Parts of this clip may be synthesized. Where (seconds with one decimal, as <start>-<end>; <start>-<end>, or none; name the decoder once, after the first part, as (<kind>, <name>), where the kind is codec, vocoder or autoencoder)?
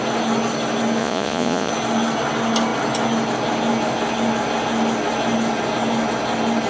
1.0-1.7 (vocoder, Vocos)